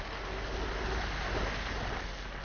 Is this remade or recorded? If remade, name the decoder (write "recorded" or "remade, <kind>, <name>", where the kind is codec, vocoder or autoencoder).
recorded